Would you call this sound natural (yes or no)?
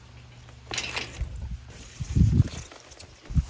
yes